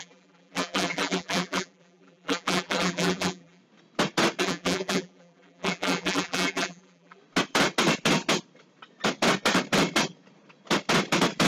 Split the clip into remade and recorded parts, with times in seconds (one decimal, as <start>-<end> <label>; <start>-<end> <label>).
0.0-3.6 remade; 3.6-4.4 recorded; 4.4-7.2 remade; 7.2-11.5 recorded